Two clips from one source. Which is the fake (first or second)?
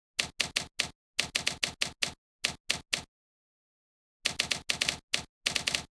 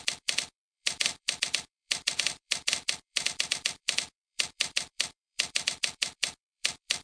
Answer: second